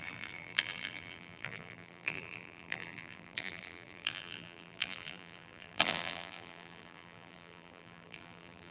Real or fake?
fake